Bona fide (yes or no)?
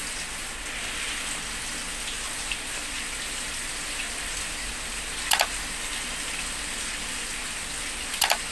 yes